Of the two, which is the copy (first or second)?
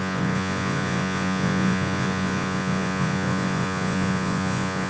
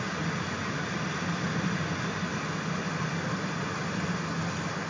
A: first